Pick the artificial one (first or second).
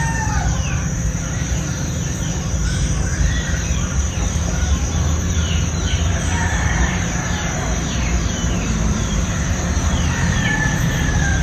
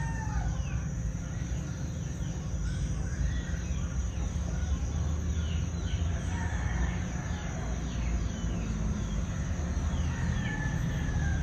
first